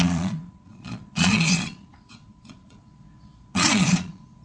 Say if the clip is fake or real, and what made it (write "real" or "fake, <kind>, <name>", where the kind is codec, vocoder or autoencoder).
fake, vocoder, Vocos